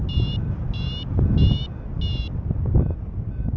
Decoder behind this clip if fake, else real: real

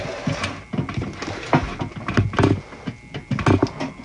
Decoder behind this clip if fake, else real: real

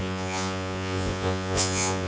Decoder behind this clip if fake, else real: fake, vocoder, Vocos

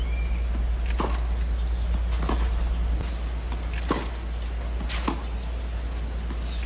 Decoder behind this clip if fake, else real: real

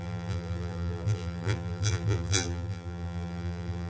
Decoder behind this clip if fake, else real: fake, vocoder, BigVGAN v2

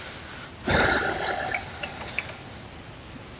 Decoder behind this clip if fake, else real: real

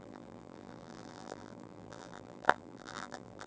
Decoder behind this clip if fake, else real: fake, vocoder, BigVGAN v2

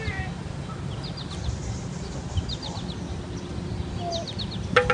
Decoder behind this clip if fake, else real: real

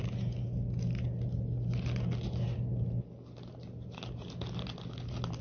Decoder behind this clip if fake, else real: real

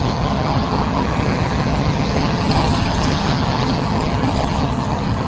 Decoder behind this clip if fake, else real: fake, vocoder, HiFi-GAN